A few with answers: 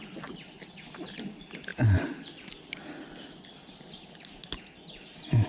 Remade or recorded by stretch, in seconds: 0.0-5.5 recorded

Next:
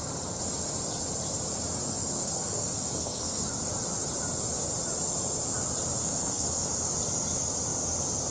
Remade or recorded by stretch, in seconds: 0.0-2.0 recorded; 2.0-3.5 remade; 3.5-6.0 recorded; 6.0-6.7 remade; 6.7-8.3 recorded

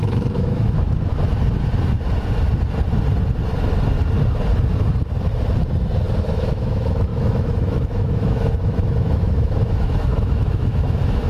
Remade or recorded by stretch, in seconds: 0.0-1.1 remade; 1.1-6.1 recorded; 6.1-11.3 remade

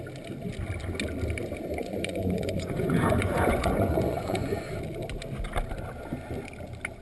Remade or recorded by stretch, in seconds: 0.0-1.8 recorded; 1.8-4.7 remade; 4.7-7.0 recorded